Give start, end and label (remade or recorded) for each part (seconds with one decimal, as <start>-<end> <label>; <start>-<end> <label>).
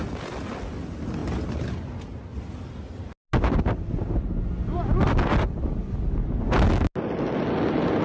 0.0-8.0 recorded